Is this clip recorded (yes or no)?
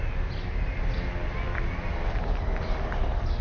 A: yes